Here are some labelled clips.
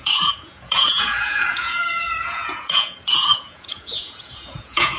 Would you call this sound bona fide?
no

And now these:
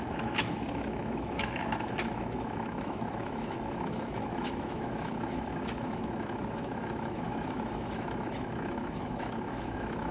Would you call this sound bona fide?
no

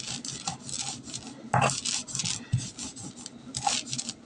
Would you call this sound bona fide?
yes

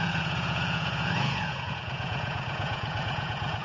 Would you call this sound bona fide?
no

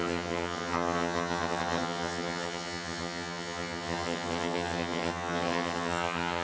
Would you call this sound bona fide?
no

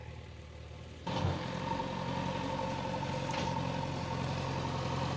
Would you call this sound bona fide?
yes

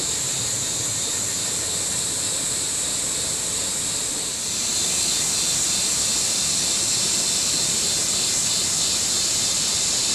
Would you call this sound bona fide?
yes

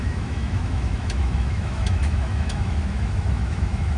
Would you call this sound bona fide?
no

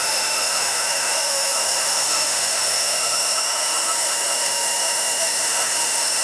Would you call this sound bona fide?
no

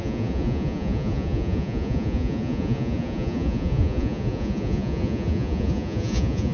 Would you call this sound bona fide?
no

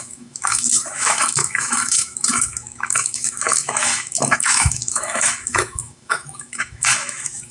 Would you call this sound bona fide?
no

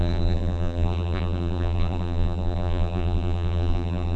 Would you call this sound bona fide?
no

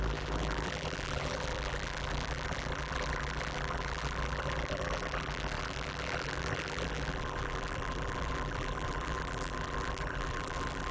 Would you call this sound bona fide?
no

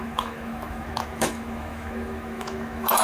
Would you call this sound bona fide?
no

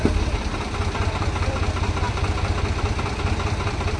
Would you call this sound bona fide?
no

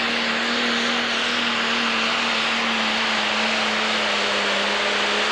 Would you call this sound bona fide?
yes